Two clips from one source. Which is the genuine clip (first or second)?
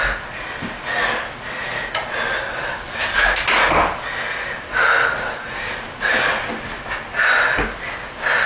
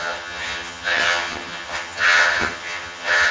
first